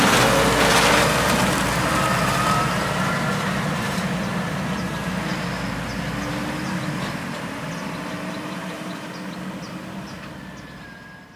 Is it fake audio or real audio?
real